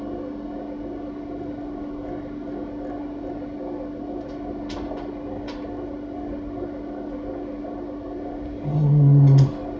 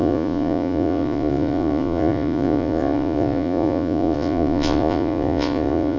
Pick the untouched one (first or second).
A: first